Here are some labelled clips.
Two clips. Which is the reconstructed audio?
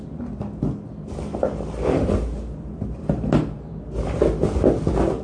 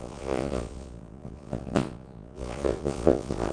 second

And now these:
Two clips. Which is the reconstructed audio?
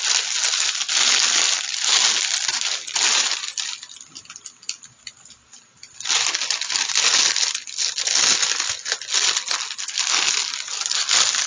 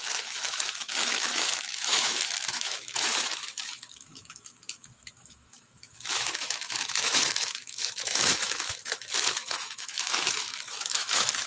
second